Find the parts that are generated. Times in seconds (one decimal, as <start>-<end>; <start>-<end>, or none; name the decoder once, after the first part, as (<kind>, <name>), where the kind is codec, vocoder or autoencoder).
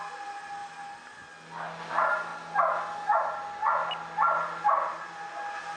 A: none